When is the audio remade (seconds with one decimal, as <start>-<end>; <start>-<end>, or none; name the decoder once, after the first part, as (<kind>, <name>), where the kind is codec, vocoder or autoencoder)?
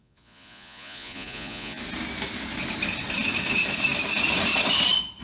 0.0-1.8 (vocoder, Vocos)